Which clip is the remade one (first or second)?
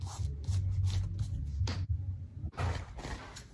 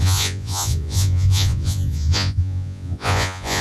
second